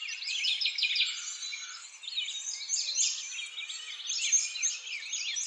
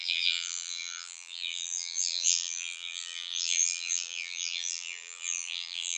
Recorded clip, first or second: first